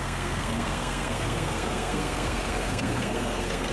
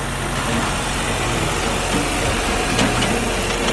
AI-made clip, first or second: first